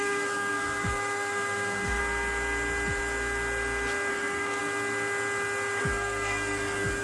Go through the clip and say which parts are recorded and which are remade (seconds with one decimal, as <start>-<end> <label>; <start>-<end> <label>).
0.0-2.0 remade; 2.0-4.1 recorded; 4.1-4.6 remade; 4.6-5.8 recorded; 5.8-7.0 remade